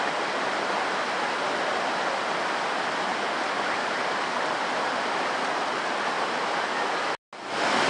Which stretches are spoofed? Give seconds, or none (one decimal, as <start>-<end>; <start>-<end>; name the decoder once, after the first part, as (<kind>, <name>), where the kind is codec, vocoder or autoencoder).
none